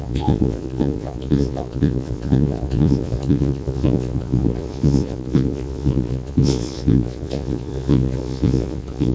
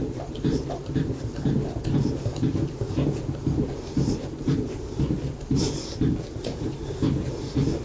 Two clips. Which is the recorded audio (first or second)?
second